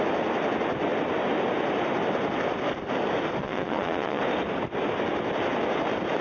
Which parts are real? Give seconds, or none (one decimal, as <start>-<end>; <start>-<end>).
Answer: 0.0-3.4; 4.2-6.2